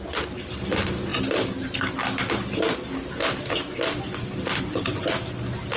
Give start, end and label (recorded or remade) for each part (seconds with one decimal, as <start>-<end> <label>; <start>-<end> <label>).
0.0-5.8 recorded